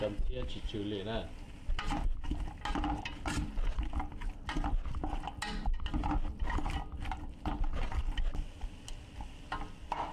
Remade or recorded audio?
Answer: recorded